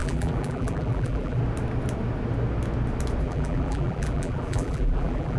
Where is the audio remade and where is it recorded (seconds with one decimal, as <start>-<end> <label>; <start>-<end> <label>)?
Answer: 0.0-1.4 remade; 1.4-3.2 recorded; 3.2-5.4 remade